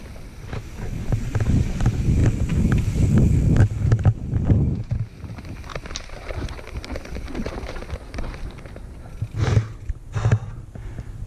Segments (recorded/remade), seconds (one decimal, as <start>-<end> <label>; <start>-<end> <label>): 0.0-5.7 recorded; 5.7-7.5 remade; 7.5-11.3 recorded